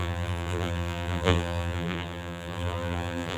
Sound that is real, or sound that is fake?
fake